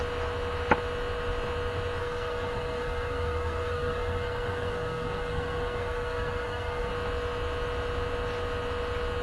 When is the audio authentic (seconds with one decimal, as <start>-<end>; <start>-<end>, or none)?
0.0-2.0; 6.9-9.2